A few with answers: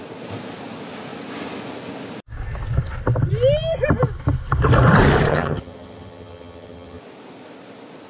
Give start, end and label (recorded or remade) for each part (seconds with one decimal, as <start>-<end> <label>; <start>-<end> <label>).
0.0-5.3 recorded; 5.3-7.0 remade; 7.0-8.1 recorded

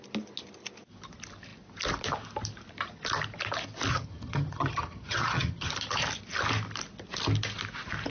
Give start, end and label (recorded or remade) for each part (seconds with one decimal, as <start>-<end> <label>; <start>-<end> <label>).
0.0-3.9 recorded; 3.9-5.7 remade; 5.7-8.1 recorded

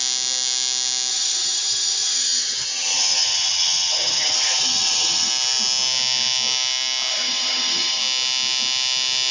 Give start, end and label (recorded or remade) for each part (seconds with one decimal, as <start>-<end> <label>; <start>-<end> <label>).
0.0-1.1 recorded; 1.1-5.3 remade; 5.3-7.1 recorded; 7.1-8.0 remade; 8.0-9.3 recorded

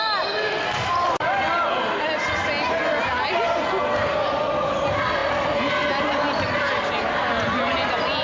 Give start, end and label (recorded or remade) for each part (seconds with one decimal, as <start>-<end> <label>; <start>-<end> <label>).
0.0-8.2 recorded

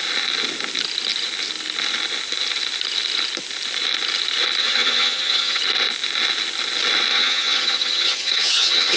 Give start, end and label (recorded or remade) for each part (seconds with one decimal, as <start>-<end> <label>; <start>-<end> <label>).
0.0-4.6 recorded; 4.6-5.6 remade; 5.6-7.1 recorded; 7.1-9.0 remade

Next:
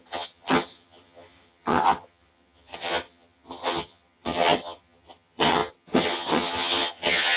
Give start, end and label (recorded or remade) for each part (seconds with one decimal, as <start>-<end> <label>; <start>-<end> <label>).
0.0-7.4 remade

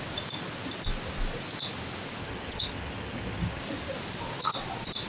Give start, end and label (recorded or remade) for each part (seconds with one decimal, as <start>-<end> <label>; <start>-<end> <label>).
0.0-2.2 recorded; 2.2-3.6 remade; 3.6-5.1 recorded